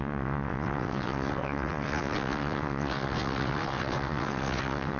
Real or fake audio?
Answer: fake